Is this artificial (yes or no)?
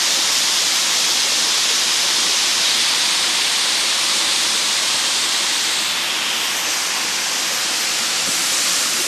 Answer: no